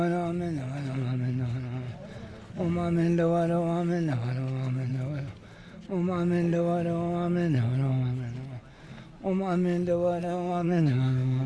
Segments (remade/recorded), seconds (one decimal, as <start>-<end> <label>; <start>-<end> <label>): 0.0-10.2 recorded; 10.2-11.5 remade

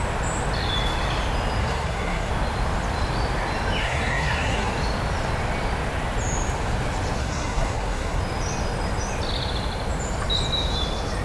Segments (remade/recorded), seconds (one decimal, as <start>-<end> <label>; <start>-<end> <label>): 0.0-1.6 recorded; 1.6-2.3 remade; 2.3-3.8 recorded; 3.8-4.7 remade; 4.7-7.2 recorded; 7.2-8.2 remade; 8.2-11.2 recorded

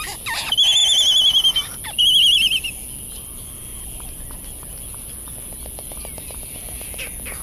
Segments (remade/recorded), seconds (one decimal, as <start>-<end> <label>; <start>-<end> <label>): 0.0-7.4 recorded

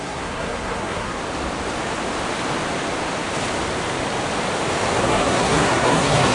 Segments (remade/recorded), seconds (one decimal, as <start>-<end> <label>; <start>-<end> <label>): 0.0-1.2 remade; 1.2-5.0 recorded; 5.0-6.3 remade

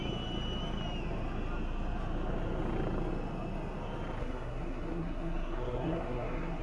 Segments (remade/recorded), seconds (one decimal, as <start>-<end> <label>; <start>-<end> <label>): 0.0-4.2 recorded; 4.2-6.6 remade

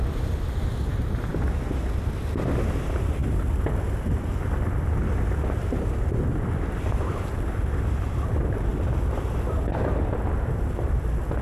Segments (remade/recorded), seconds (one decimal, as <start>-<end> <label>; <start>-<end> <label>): 0.0-11.4 recorded

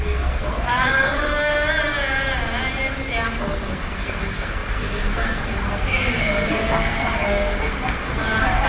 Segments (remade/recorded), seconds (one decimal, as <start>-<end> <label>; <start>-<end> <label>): 0.0-1.5 remade; 1.5-3.4 recorded; 3.4-8.7 remade